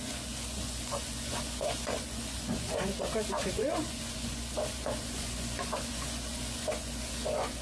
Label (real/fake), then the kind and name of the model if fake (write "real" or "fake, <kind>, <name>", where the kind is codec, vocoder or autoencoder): fake, vocoder, Vocos